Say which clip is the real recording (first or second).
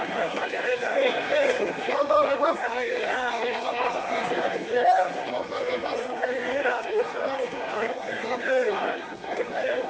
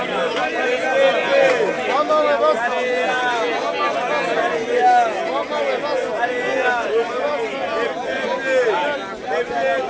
second